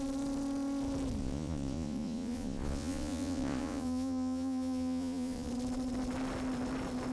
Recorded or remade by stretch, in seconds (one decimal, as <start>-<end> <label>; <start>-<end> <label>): 0.0-1.2 recorded; 1.2-5.5 remade; 5.5-7.1 recorded